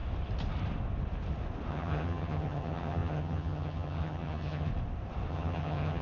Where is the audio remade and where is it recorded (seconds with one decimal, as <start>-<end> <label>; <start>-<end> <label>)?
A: 0.0-1.7 recorded; 1.7-4.7 remade; 4.7-5.3 recorded; 5.3-6.0 remade